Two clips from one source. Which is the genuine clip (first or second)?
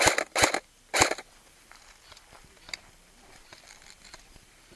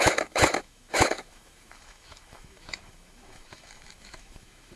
first